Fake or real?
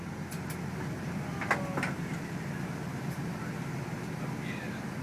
real